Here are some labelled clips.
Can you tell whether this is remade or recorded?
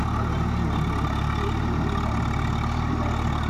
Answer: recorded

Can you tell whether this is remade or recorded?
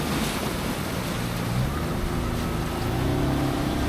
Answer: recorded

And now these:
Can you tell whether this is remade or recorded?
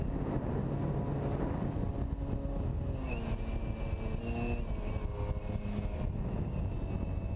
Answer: recorded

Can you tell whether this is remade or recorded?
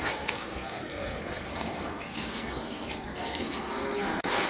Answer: remade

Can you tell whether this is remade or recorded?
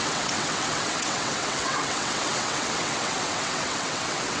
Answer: remade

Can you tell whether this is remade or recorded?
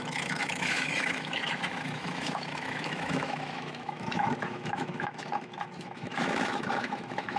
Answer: remade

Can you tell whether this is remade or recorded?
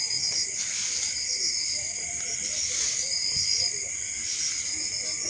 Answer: recorded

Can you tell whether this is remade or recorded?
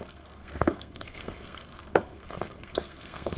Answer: remade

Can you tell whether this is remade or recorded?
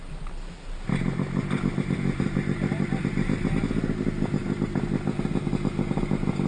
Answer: recorded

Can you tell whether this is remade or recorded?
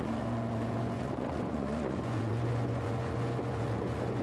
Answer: remade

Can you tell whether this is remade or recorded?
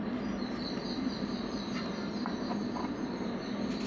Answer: recorded